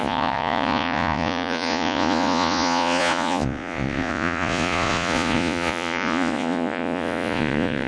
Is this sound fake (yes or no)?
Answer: yes